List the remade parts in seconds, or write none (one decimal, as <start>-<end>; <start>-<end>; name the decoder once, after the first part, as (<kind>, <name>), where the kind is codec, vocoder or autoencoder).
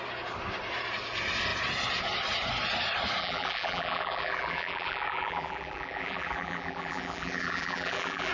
3.2-8.3 (vocoder, BigVGAN v2)